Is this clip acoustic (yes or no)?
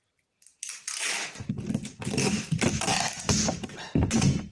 yes